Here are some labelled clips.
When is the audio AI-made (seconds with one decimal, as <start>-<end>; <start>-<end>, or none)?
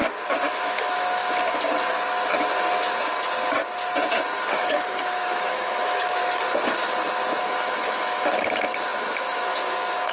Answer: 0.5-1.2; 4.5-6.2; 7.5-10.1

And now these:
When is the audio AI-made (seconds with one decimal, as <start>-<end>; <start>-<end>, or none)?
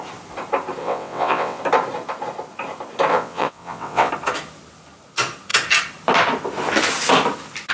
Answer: 0.8-1.6; 3.1-4.1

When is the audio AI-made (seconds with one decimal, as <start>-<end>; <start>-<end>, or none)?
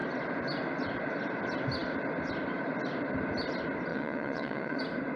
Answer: 3.9-4.8